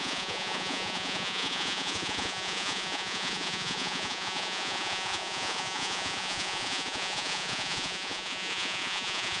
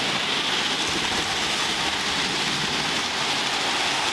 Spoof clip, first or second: first